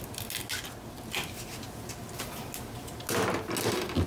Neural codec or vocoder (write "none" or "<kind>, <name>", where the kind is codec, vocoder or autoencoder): none